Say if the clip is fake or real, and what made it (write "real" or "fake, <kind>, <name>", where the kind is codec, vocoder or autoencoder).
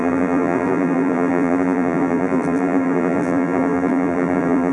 fake, vocoder, BigVGAN v2